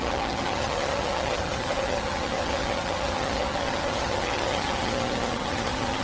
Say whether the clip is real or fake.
fake